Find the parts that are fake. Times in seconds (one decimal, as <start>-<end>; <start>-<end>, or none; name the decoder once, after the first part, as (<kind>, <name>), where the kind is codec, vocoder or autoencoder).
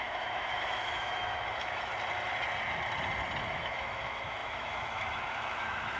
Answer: 0.0-1.9 (autoencoder, DAC-VAE); 3.5-6.0